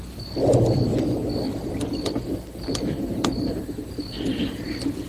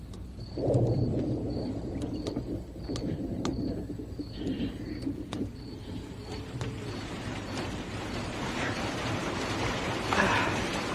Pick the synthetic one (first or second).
second